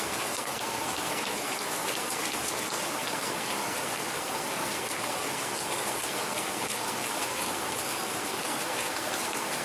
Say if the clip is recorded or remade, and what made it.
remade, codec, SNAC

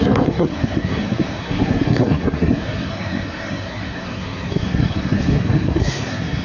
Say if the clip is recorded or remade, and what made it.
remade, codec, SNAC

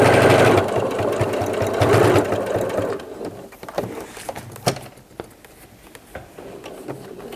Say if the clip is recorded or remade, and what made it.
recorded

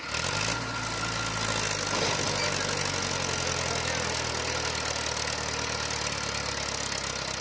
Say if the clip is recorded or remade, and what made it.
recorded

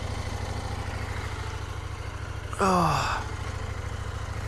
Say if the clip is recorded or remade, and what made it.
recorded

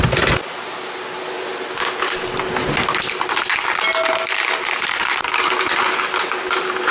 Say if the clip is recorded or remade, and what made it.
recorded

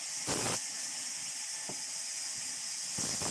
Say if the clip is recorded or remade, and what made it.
recorded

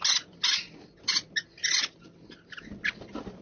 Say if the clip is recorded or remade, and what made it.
recorded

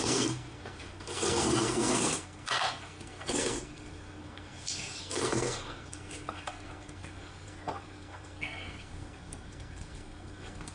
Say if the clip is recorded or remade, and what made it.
remade, codec, SNAC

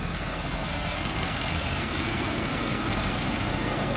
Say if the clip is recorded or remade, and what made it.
remade, codec, SNAC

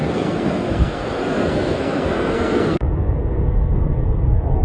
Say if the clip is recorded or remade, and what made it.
remade, codec, SNAC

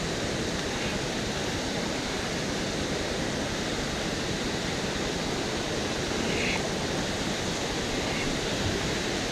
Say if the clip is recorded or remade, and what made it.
recorded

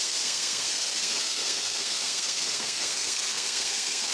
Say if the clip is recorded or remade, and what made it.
remade, codec, SNAC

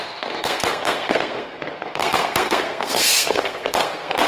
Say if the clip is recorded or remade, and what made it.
remade, codec, SNAC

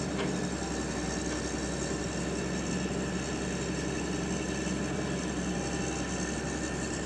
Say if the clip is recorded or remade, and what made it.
recorded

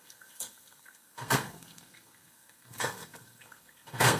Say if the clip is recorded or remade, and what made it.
remade, codec, SNAC